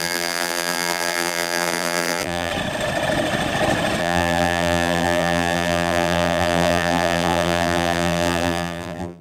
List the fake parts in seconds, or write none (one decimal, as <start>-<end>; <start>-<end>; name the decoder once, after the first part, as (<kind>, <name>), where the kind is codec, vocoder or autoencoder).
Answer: 0.0-2.5 (vocoder, BigVGAN v2); 4.0-9.2